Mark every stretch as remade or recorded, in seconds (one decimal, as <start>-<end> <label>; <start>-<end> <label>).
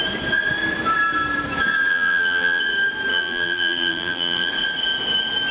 0.0-1.9 recorded; 1.9-2.6 remade; 2.6-3.1 recorded; 3.1-4.5 remade; 4.5-5.5 recorded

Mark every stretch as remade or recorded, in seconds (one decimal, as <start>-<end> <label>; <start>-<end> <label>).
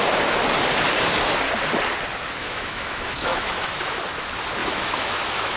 0.0-2.4 recorded; 2.4-4.0 remade; 4.0-4.6 recorded; 4.6-5.6 remade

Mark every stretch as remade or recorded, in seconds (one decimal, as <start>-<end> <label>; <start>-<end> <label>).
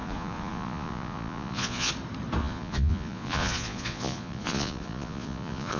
0.0-1.9 remade; 1.9-2.4 recorded; 2.4-5.8 remade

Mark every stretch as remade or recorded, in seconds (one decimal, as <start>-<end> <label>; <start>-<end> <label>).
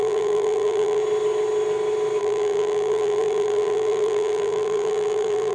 0.0-1.0 remade; 1.0-2.2 recorded; 2.2-5.5 remade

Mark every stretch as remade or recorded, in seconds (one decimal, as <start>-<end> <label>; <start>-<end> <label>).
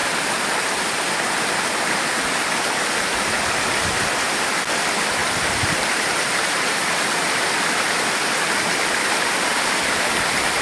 0.0-5.2 recorded; 5.2-6.9 remade; 6.9-10.6 recorded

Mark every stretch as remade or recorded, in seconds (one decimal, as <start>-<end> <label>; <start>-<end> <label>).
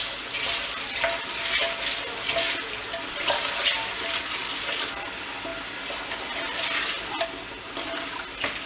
0.0-8.7 recorded